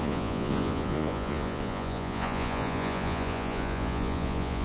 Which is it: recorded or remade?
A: remade